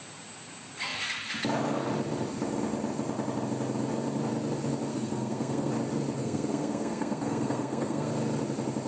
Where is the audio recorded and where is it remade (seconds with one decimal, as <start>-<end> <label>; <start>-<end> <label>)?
0.0-4.9 recorded; 4.9-5.7 remade; 5.7-6.2 recorded; 6.2-8.1 remade; 8.1-8.9 recorded